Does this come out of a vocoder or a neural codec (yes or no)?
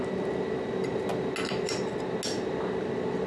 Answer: no